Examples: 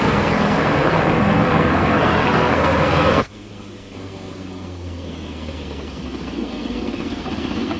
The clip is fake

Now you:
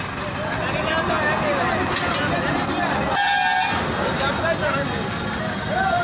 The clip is real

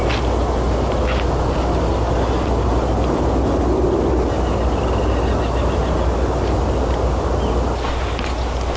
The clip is real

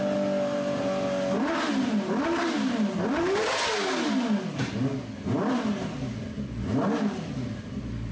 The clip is real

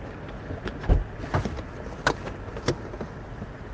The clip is real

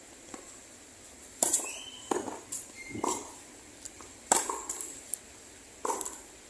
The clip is fake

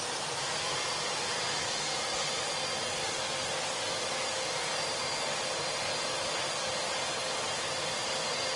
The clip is real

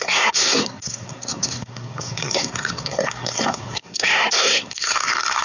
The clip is fake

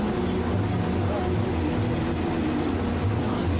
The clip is real